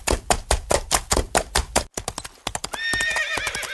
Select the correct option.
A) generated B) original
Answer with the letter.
B